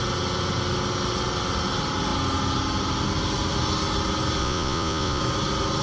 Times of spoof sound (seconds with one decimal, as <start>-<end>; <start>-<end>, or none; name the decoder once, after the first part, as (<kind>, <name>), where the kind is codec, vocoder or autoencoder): 4.4-5.2 (vocoder, Vocos)